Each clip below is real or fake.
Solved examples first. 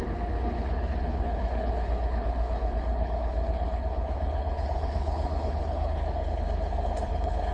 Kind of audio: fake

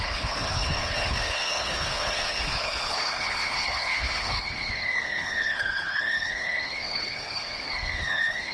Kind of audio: fake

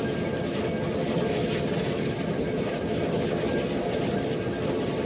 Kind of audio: real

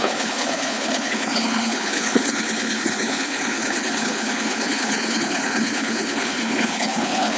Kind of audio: fake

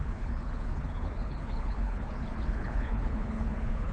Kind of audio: fake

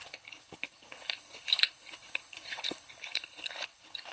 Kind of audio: fake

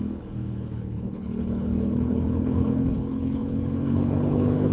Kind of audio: fake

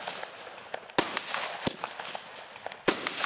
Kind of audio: real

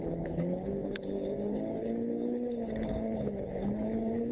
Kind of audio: fake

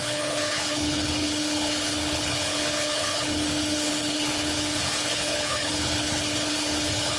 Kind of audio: fake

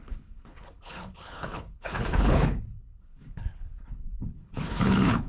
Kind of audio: fake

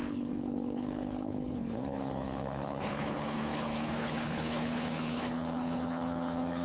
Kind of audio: fake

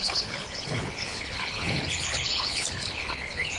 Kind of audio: fake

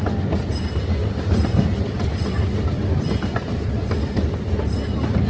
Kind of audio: real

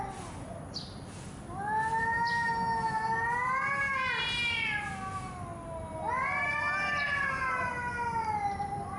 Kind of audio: real